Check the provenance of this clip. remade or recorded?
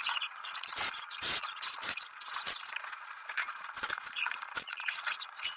remade